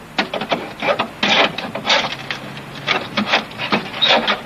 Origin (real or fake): real